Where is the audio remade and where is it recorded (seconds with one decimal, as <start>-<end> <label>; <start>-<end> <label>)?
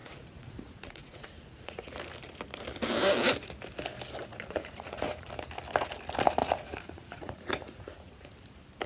0.0-1.8 remade; 1.8-4.3 recorded; 4.3-5.3 remade; 5.3-6.4 recorded; 6.4-8.3 remade; 8.3-8.9 recorded